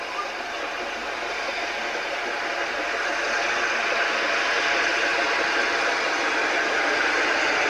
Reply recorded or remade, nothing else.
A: recorded